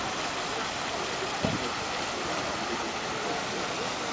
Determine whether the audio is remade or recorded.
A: recorded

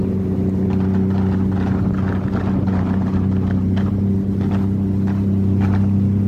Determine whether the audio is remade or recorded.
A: recorded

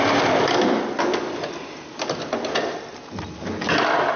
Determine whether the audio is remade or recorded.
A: recorded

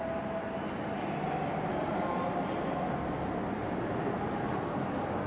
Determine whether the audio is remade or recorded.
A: recorded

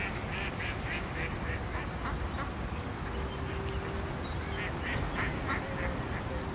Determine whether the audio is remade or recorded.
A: recorded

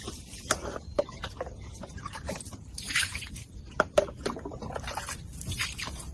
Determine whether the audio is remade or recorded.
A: remade